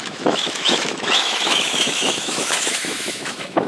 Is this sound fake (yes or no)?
yes